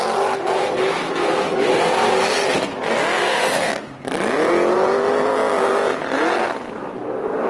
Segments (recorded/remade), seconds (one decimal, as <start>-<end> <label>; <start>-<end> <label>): 0.0-3.2 recorded; 3.2-3.7 remade; 3.7-7.5 recorded